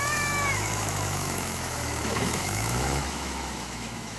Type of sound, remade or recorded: remade